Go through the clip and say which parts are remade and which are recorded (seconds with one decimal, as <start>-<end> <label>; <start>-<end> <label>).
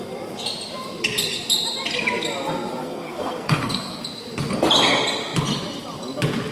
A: 0.0-2.8 recorded; 2.8-4.0 remade; 4.0-6.5 recorded